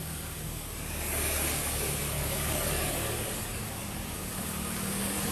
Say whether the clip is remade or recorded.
remade